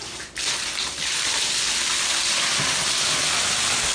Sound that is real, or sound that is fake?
real